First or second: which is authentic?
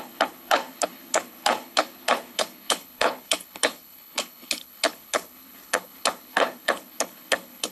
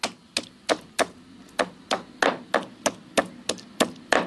second